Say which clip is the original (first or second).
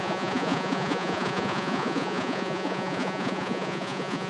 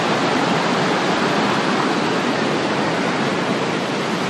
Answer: second